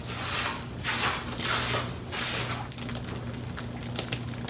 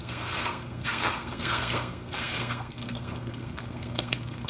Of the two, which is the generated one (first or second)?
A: second